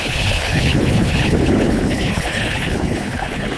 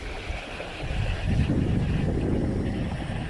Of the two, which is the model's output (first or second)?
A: first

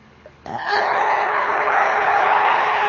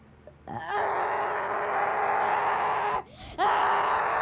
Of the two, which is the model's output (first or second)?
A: first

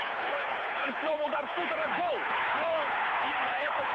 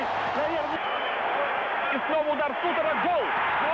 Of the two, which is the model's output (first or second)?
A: first